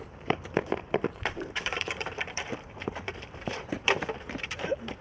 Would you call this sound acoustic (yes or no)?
no